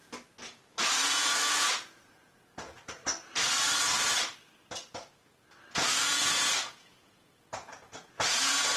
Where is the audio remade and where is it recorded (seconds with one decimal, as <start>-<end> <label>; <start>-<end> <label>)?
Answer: 0.0-0.9 recorded; 0.9-3.0 remade; 3.0-5.9 recorded; 5.9-8.8 remade